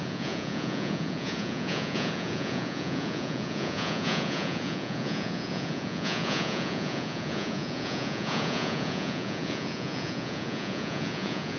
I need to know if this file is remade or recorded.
remade